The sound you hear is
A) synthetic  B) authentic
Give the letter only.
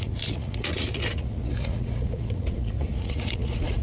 A